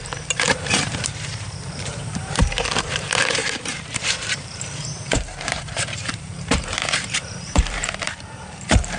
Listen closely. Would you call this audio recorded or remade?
remade